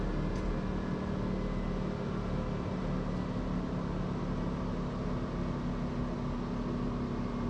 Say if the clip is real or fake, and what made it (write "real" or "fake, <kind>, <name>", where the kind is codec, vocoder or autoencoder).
real